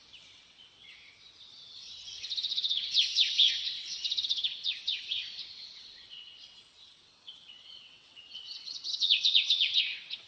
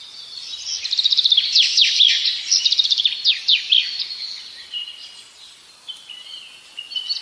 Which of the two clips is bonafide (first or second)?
second